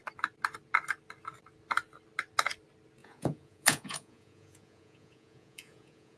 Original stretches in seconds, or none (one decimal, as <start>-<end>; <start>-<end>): 0.0-3.0